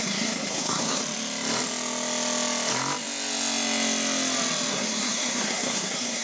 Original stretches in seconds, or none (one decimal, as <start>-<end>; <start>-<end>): 1.0-4.7

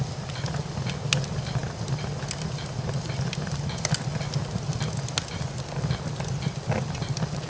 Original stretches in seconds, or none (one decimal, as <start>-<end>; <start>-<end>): 0.0-7.5